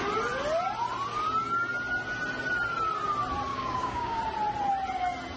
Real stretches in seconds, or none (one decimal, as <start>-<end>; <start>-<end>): 0.0-3.5; 4.2-5.4